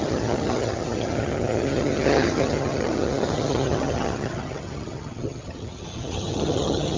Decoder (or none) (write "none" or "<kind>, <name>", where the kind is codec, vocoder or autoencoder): vocoder, HiFi-GAN